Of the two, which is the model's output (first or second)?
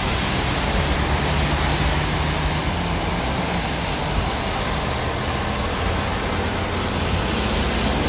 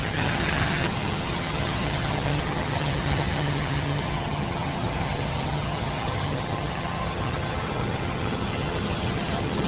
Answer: second